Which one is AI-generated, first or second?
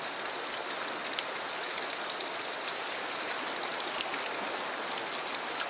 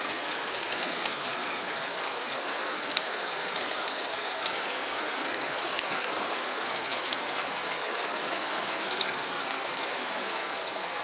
second